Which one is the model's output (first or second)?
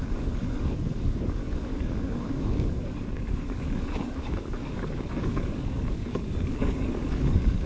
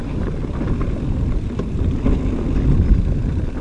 first